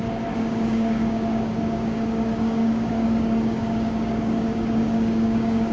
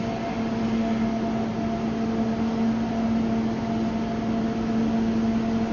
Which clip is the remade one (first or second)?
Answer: first